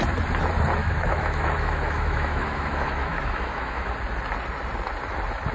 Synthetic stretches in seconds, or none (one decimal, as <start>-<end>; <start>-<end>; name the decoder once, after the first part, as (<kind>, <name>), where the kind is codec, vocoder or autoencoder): 0.8-3.9 (autoencoder, DAC-VAE)